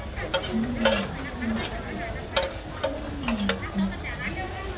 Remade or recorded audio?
recorded